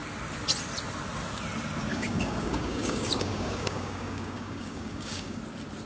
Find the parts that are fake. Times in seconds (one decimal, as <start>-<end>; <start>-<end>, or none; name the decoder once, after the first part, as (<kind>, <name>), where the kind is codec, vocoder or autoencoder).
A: 1.9-5.4 (codec, DAC)